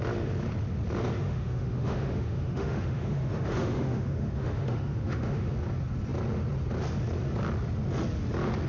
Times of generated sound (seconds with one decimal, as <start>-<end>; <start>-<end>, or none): 1.2-5.5